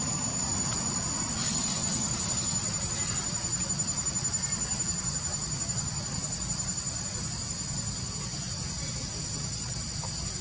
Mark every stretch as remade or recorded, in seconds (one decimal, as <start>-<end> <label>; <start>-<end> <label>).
0.0-10.4 recorded